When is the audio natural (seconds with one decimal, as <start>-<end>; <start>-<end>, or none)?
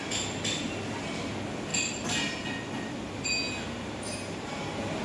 0.0-5.0